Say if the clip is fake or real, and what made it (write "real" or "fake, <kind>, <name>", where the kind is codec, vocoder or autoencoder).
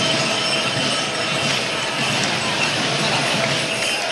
real